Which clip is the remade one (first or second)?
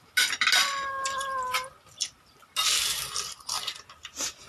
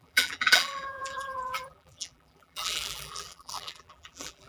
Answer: second